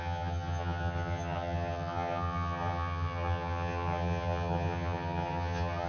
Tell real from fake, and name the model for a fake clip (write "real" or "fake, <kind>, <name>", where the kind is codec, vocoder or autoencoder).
fake, vocoder, HiFi-GAN